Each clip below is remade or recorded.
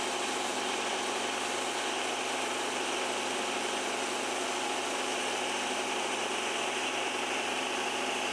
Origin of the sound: recorded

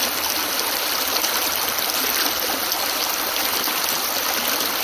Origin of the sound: recorded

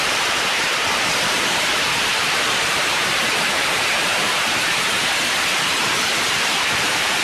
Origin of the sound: remade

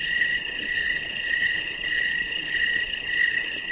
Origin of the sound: remade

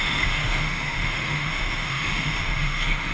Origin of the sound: remade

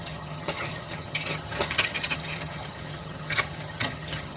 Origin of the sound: remade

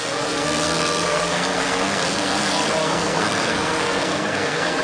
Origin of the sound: remade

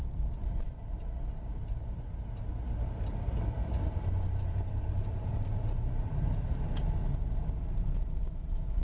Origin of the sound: remade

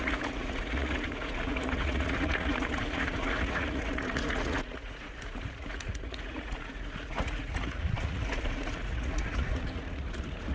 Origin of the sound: remade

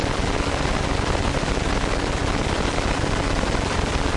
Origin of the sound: recorded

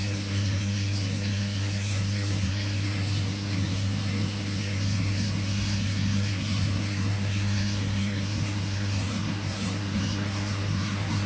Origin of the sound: remade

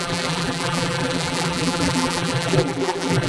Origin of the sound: remade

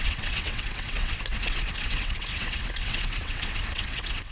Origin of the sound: remade